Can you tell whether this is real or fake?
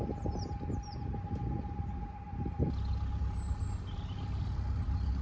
real